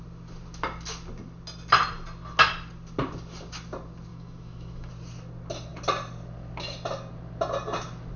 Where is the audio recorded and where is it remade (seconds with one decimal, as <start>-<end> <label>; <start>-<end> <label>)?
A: 0.0-4.1 recorded; 4.1-4.9 remade; 4.9-8.2 recorded